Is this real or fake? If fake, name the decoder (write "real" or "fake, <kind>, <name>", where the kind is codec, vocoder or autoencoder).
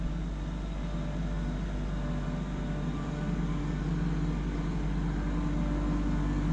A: real